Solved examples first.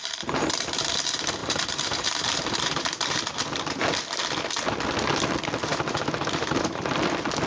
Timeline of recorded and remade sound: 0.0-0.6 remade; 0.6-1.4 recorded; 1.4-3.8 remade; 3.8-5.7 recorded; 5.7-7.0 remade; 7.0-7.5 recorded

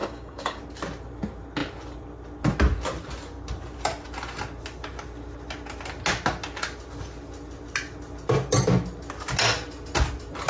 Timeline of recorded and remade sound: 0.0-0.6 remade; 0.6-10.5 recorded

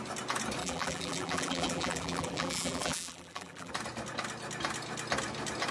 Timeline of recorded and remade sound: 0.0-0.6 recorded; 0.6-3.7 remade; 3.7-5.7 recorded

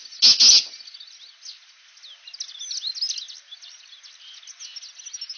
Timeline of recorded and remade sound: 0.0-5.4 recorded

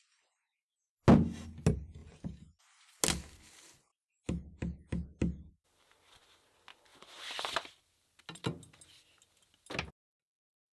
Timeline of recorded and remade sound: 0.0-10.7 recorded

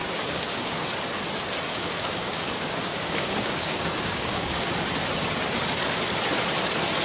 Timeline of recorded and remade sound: 0.0-0.9 remade; 0.9-1.7 recorded; 1.7-4.7 remade; 4.7-7.0 recorded

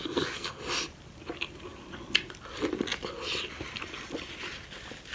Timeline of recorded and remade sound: 0.0-0.6 remade; 0.6-5.1 recorded

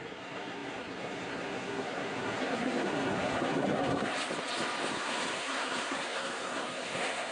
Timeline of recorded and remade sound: 0.0-4.1 remade; 4.1-4.9 recorded; 4.9-7.3 remade